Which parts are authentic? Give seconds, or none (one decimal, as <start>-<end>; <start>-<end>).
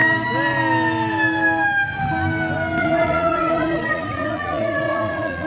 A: 0.0-2.8